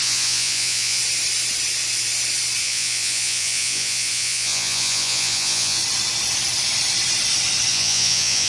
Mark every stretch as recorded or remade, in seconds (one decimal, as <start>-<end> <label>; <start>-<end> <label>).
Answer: 0.0-1.0 remade; 1.0-2.6 recorded; 2.6-5.8 remade; 5.8-7.7 recorded; 7.7-8.5 remade